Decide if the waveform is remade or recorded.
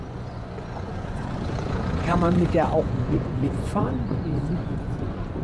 remade